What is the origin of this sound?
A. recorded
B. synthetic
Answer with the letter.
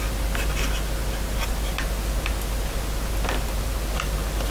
A